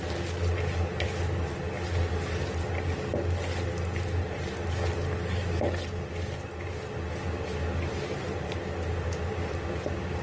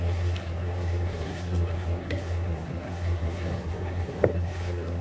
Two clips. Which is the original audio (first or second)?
first